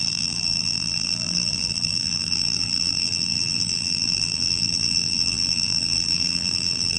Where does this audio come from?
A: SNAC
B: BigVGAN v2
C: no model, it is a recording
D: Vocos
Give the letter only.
B